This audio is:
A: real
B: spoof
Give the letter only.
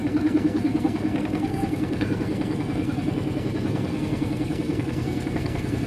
B